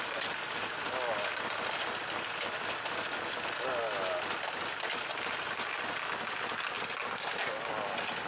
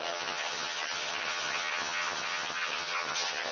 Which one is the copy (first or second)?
second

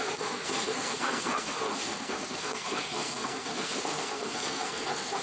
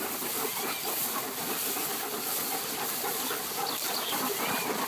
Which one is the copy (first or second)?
first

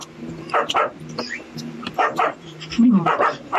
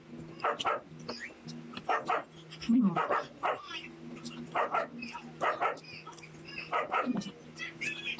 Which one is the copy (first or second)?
first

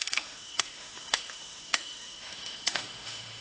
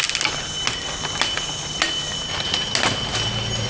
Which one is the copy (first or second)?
first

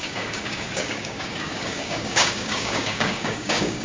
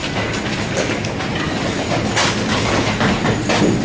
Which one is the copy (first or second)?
first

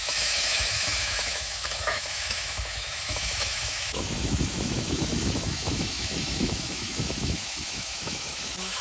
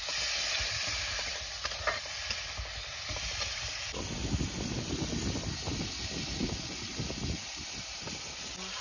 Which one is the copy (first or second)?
first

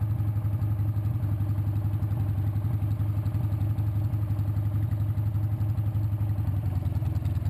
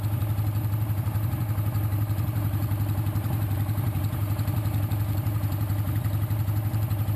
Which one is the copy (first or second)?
second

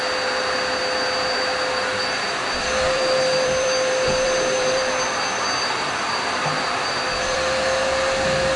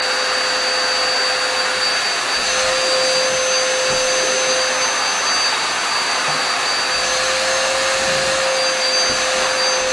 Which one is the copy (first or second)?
first